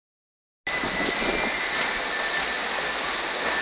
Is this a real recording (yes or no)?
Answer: yes